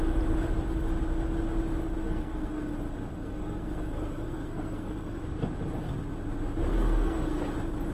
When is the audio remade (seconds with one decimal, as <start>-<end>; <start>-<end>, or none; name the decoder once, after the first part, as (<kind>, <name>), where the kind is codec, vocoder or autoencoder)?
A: 2.0-2.7 (codec, SNAC); 3.1-5.2; 6.7-7.4